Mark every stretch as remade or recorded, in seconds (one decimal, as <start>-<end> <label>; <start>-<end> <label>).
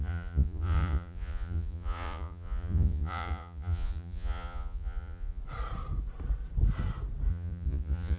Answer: 0.0-5.4 remade; 5.4-7.3 recorded; 7.3-8.2 remade